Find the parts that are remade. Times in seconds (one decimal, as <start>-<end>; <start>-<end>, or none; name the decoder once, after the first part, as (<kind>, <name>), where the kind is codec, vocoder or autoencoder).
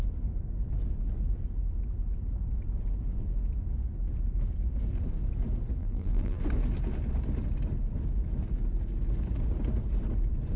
5.8-6.4 (vocoder, BigVGAN v2)